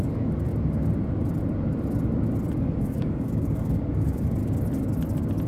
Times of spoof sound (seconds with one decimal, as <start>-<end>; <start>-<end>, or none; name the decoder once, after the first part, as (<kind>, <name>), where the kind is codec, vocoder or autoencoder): 0.0-0.5 (codec, DAC); 2.6-4.4